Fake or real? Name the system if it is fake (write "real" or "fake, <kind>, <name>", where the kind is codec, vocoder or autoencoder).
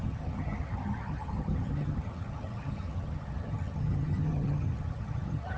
fake, vocoder, HiFi-GAN